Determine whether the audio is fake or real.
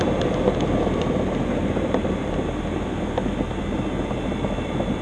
real